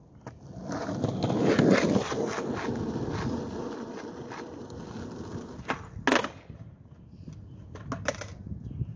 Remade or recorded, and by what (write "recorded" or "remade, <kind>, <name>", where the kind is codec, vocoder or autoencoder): recorded